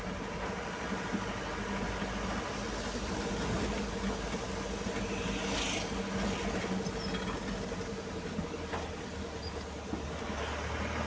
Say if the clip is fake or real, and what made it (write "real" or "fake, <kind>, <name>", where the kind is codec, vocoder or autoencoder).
real